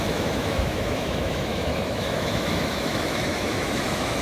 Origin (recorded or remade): remade